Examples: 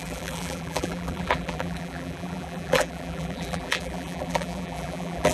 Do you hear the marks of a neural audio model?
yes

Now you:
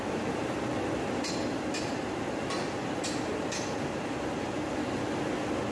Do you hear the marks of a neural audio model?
no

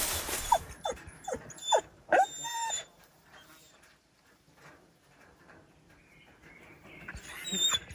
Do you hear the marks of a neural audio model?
yes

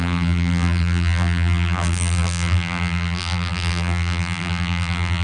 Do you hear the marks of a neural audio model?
yes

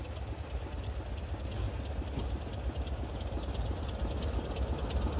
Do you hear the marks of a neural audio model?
no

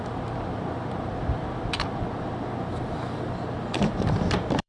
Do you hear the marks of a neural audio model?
yes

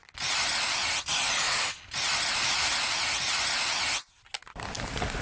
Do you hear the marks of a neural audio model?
no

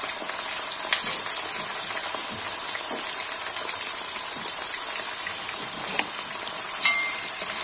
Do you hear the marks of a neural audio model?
yes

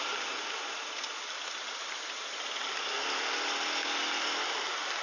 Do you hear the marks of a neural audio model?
no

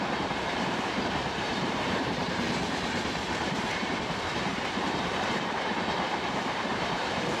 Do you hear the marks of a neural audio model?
yes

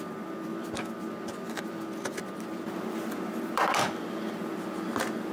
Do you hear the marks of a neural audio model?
yes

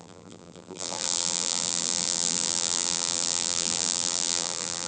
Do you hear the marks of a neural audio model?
yes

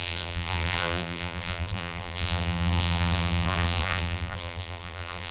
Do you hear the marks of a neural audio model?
yes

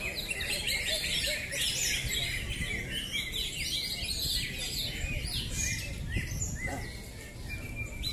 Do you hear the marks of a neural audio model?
no